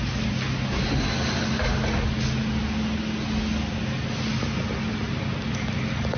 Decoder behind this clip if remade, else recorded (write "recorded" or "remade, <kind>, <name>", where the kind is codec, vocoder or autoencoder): recorded